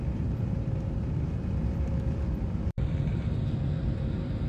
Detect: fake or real fake